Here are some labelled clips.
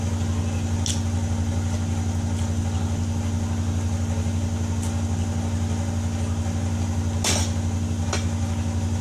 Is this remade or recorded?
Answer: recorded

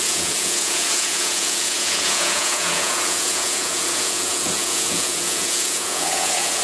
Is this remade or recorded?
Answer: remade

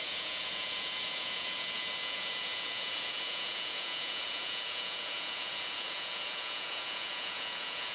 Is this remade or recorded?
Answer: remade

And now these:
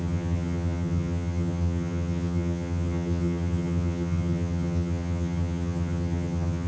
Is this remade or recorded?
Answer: remade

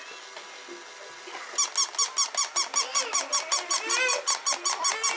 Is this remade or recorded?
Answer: recorded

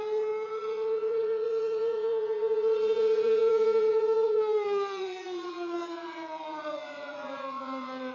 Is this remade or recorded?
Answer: remade